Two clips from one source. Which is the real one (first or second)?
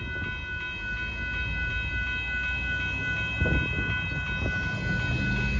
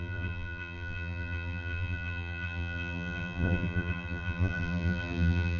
first